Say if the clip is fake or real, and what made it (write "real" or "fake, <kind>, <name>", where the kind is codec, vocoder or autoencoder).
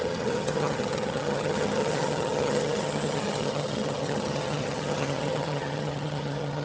fake, vocoder, HiFi-GAN